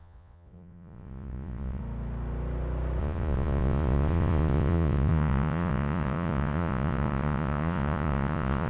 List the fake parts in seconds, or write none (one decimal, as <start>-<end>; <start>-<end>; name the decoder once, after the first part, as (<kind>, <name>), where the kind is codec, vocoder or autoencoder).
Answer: 0.0-1.8 (vocoder, Vocos); 3.0-8.7